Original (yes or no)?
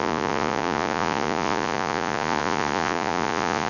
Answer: no